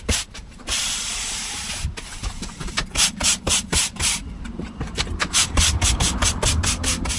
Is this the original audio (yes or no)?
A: no